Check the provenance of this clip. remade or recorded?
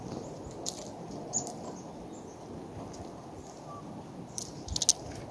recorded